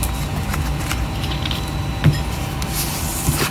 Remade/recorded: recorded